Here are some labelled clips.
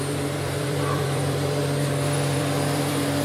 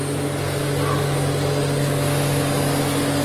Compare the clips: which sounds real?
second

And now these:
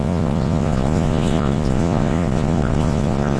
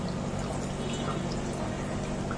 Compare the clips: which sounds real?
second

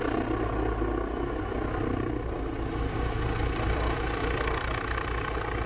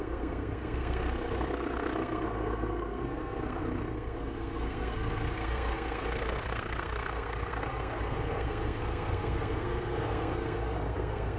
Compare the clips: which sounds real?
first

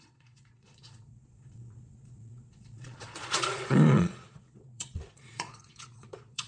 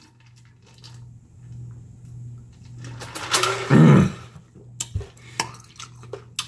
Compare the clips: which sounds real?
second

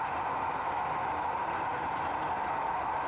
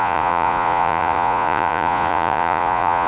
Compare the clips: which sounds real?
first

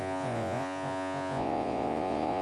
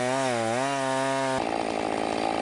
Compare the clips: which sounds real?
second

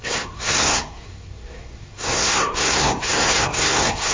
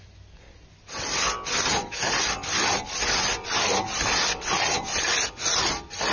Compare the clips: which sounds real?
second